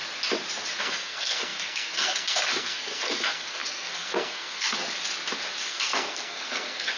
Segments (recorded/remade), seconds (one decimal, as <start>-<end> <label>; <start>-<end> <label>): 0.0-0.8 recorded; 0.8-4.8 remade; 4.8-5.6 recorded; 5.6-7.0 remade